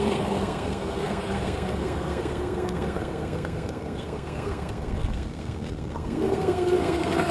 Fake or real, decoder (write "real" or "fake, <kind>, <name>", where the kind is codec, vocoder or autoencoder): fake, codec, SNAC